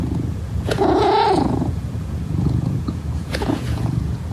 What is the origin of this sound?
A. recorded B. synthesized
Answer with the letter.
B